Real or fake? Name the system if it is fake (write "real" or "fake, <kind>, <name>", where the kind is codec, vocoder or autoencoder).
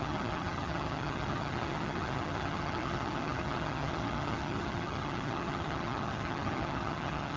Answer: fake, vocoder, HiFi-GAN